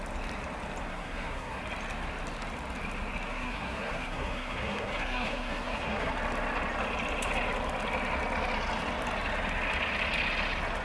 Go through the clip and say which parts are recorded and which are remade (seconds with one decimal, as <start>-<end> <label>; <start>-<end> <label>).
0.0-0.9 recorded; 0.9-1.6 remade; 1.6-3.3 recorded; 3.3-6.1 remade; 6.1-10.8 recorded